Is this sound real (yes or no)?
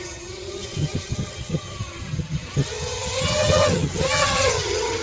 no